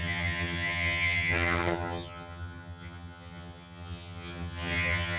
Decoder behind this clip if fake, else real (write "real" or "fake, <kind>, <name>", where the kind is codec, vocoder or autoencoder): fake, vocoder, HiFi-GAN